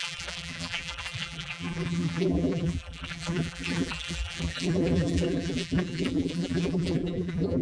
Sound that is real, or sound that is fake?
fake